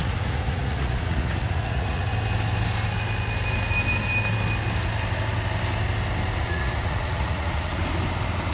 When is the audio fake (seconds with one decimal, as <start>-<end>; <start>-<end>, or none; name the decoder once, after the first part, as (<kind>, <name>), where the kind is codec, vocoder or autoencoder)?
0.0-2.1 (vocoder, Vocos); 6.4-7.8